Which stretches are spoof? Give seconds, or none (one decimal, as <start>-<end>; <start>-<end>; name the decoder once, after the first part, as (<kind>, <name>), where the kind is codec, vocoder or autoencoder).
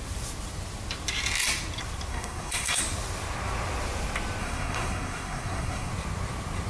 2.1-2.8 (codec, SNAC); 4.4-5.9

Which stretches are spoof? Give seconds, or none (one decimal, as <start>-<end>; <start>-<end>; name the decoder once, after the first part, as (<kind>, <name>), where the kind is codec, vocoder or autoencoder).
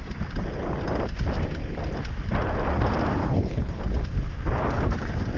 3.2-3.8 (codec, HILCodec)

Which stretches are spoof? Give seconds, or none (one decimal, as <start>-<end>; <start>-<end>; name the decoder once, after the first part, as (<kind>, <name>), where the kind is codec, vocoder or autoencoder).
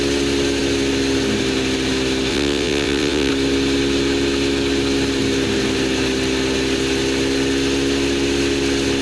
2.3-3.3 (vocoder, WaveNeXt)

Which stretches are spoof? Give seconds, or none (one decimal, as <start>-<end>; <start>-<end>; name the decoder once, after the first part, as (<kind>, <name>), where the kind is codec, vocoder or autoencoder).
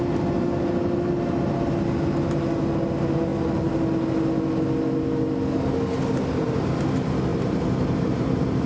7.3-8.7 (vocoder, BigVGAN v2)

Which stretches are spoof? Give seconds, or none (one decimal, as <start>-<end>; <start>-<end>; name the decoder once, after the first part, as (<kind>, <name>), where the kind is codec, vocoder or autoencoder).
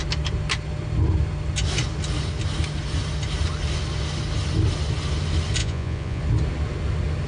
5.6-6.2 (vocoder, Vocos)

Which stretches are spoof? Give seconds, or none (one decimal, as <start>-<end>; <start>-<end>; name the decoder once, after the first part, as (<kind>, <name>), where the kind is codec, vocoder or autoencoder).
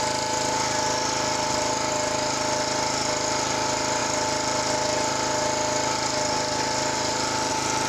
none